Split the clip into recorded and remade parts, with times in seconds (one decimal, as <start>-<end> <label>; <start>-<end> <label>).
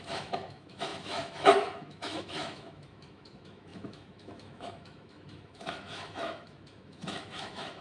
0.0-7.8 remade